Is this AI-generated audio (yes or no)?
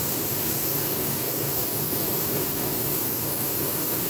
yes